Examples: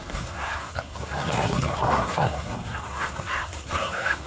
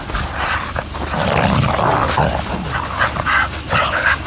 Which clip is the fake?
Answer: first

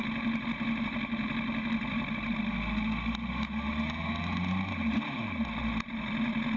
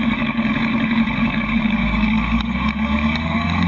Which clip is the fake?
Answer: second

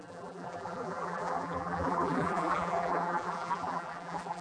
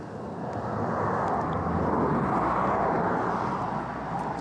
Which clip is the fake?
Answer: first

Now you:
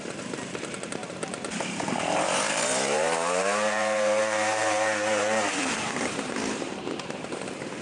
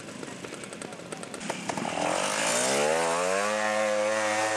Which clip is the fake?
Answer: first